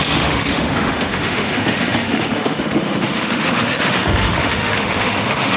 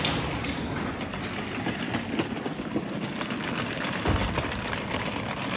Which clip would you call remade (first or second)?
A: first